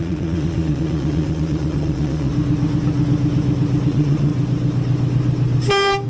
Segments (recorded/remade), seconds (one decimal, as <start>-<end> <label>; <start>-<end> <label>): 0.0-2.3 remade; 2.3-3.9 recorded; 3.9-4.3 remade; 4.3-6.1 recorded